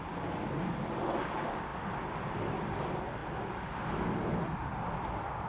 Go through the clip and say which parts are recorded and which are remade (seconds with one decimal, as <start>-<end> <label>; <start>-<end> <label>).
0.0-5.5 recorded